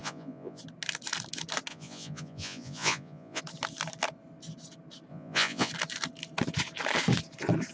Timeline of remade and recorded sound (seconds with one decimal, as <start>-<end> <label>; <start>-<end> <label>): 0.0-0.6 remade; 0.6-1.7 recorded; 1.7-3.4 remade; 3.4-5.1 recorded; 5.1-5.7 remade; 5.7-7.7 recorded